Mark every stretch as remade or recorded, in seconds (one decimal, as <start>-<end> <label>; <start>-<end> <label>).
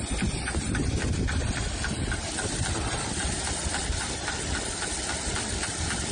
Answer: 0.0-1.4 remade; 1.4-3.9 recorded; 3.9-6.1 remade